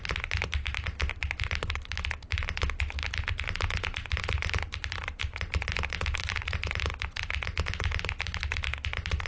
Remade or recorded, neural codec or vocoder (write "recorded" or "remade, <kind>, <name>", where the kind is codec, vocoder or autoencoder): recorded